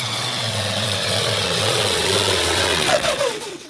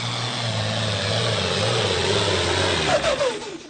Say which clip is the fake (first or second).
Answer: first